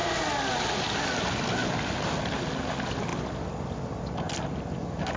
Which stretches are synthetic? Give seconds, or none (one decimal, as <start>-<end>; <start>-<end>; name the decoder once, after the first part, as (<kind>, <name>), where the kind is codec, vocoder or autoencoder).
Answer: none